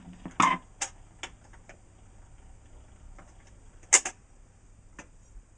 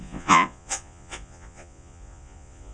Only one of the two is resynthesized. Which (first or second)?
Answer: second